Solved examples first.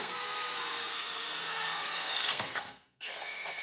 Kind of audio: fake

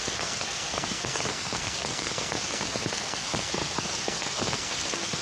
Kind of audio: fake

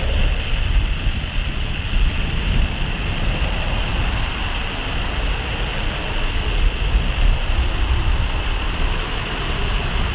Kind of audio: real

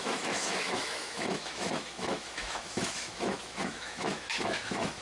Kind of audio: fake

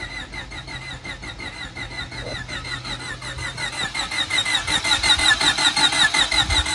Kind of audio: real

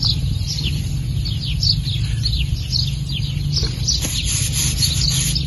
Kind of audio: real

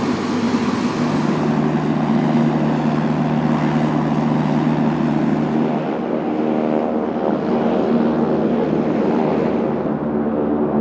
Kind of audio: real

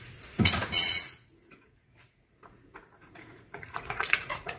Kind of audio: fake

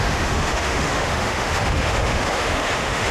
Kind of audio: fake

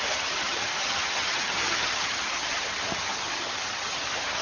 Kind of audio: fake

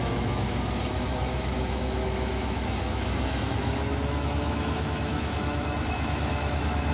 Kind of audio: fake